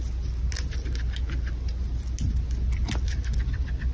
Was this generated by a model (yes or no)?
no